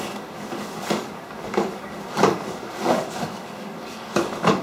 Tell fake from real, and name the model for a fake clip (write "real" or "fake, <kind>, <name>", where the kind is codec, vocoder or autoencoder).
fake, codec, DAC